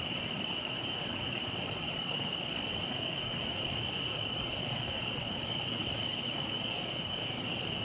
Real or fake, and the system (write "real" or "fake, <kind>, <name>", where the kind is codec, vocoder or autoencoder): fake, codec, DAC